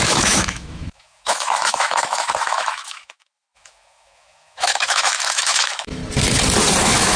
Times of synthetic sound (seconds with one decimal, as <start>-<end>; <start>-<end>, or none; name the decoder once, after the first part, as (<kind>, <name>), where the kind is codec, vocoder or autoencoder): 0.0-6.0 (autoencoder, DAC-VAE); 6.8-7.2